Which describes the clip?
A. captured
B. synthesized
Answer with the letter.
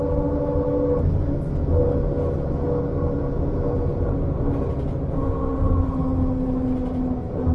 A